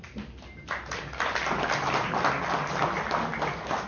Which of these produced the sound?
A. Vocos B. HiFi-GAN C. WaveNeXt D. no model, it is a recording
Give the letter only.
D